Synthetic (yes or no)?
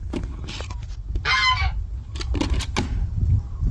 no